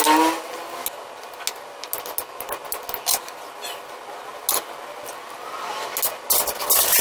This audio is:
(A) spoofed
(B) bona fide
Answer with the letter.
B